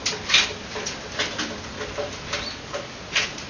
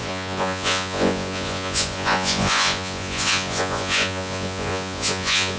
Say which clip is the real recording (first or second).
first